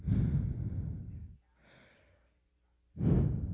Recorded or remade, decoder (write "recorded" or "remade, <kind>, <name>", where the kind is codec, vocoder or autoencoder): recorded